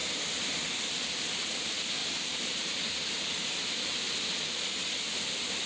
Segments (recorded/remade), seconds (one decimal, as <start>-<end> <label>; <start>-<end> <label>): 0.0-0.6 remade; 0.6-2.0 recorded; 2.0-4.0 remade; 4.0-5.7 recorded